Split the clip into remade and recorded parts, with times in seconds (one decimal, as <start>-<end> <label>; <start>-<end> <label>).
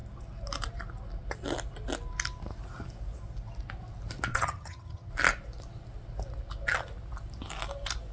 0.0-4.3 recorded; 4.3-5.1 remade; 5.1-8.1 recorded